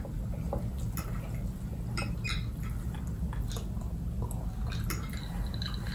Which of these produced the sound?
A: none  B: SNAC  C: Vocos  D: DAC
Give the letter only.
A